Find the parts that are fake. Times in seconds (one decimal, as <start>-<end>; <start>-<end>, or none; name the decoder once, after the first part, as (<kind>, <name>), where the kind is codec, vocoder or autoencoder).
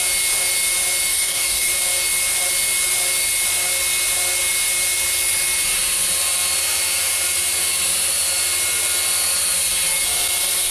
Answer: 1.1-1.7 (codec, DAC)